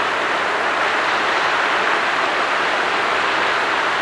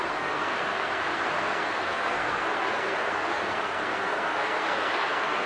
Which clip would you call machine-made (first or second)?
second